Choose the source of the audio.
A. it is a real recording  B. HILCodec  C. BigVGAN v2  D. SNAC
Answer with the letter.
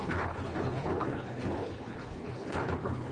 B